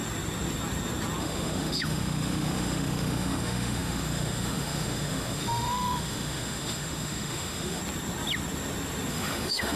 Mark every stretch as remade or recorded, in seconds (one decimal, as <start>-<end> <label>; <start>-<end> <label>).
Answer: 0.0-1.2 recorded; 1.2-7.8 remade; 7.8-9.1 recorded; 9.1-9.8 remade